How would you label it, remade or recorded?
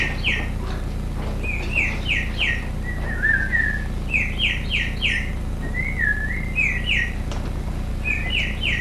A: recorded